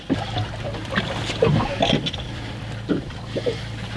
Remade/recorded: remade